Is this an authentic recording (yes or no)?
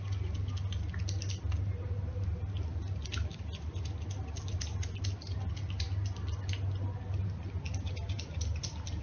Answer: yes